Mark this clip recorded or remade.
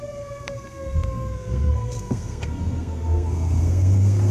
remade